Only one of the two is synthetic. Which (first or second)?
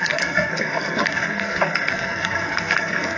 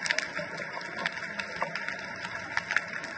first